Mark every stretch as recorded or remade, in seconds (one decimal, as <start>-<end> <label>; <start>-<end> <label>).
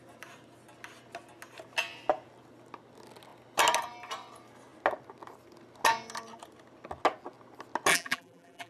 0.0-7.9 recorded; 7.9-8.7 remade